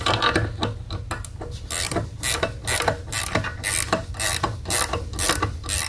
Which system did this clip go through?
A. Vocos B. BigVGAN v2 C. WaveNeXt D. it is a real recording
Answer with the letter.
D